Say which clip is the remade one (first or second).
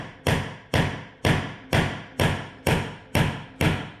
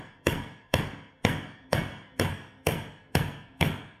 second